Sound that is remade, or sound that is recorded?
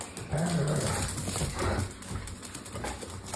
recorded